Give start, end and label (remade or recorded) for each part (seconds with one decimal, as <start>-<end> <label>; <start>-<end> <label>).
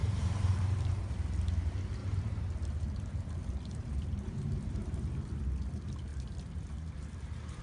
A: 0.0-0.9 remade; 0.9-2.0 recorded; 2.0-5.4 remade; 5.4-6.1 recorded; 6.1-7.6 remade